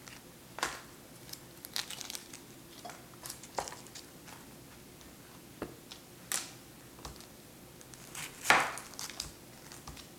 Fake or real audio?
real